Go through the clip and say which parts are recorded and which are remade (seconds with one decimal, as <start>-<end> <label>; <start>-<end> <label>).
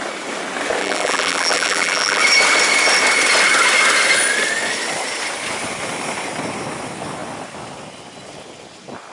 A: 0.0-0.8 recorded; 0.8-2.2 remade; 2.2-9.1 recorded